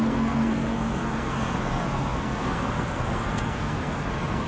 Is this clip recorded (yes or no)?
no